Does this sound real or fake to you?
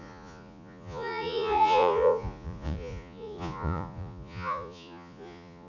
fake